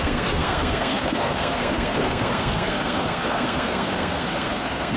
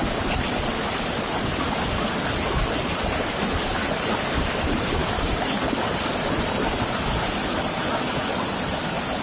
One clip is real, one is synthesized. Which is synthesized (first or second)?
first